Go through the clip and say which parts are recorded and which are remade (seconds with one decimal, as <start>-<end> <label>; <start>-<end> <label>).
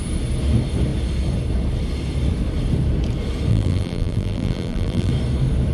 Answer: 0.0-3.5 recorded; 3.5-5.1 remade; 5.1-5.7 recorded